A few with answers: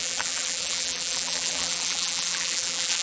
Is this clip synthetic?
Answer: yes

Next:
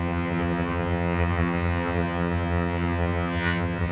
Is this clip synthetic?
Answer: yes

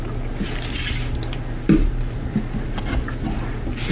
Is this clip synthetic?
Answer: no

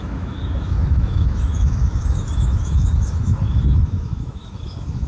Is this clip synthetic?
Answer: yes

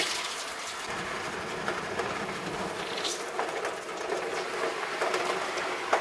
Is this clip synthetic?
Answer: no